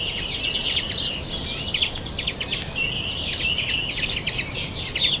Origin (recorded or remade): recorded